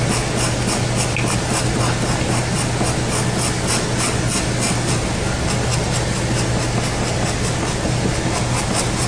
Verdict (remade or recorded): recorded